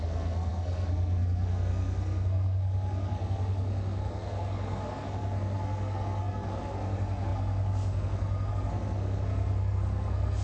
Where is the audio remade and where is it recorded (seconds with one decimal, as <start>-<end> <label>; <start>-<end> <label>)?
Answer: 0.0-10.4 remade